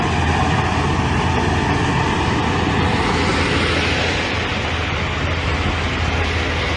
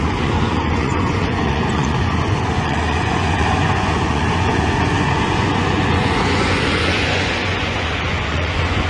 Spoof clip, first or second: second